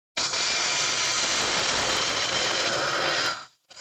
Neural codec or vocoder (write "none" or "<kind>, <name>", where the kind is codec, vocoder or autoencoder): none